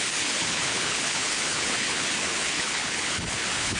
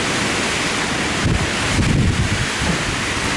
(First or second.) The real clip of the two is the second